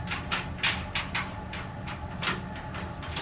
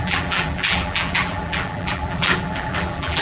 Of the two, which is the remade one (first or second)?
second